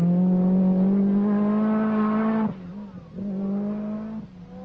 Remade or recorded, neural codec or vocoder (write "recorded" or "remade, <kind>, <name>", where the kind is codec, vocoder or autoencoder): recorded